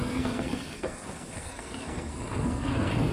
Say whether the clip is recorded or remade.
remade